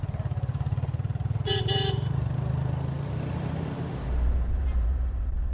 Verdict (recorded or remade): remade